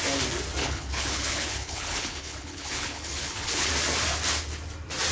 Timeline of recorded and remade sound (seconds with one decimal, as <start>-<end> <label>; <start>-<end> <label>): 0.0-0.6 recorded; 0.6-3.7 remade; 3.7-5.1 recorded